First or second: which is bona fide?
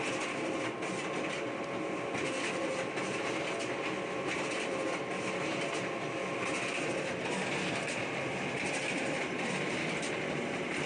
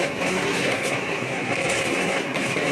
first